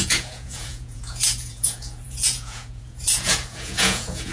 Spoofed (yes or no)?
yes